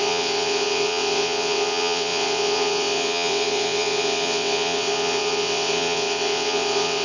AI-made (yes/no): yes